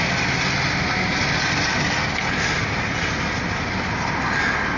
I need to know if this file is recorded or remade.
recorded